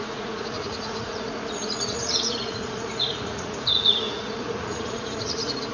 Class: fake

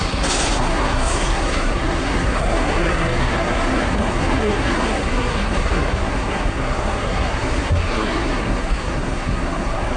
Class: fake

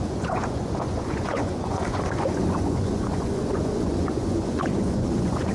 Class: fake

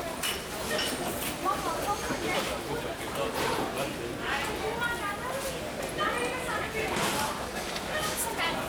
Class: real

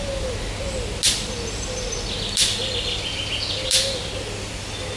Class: real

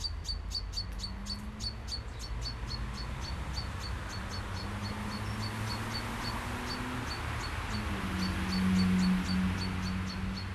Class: real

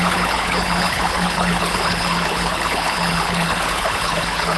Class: fake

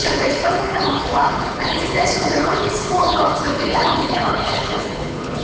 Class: fake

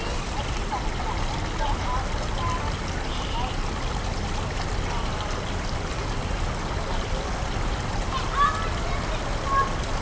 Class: real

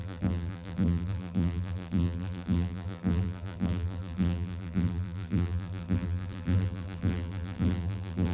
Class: fake